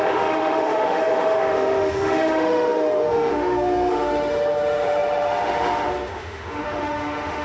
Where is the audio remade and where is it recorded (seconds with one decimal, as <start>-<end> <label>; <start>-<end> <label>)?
0.0-7.4 remade